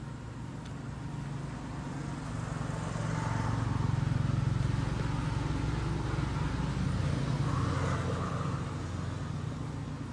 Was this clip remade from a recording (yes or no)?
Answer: no